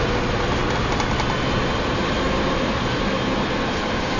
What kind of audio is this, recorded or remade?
recorded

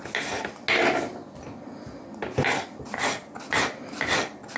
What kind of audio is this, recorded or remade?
recorded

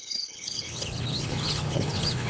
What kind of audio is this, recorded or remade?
remade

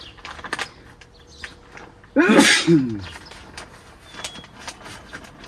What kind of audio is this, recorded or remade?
recorded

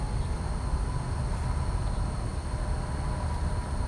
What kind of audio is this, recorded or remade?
recorded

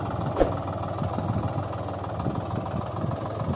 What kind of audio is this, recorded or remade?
recorded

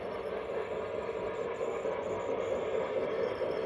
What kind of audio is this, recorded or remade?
recorded